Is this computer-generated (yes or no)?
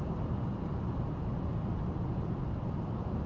no